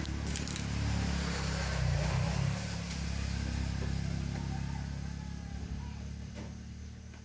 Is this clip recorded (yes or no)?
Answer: yes